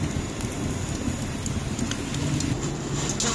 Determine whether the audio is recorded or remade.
recorded